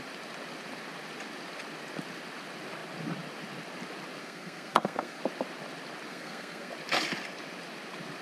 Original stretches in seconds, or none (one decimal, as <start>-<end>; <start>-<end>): 0.0-4.2; 5.2-6.1; 6.7-8.2